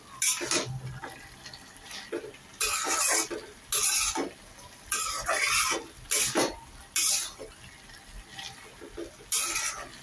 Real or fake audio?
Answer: real